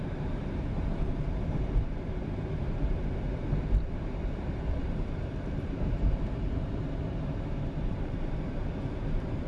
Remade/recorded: remade